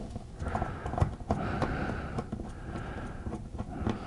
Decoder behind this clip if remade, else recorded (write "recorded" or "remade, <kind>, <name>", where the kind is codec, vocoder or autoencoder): recorded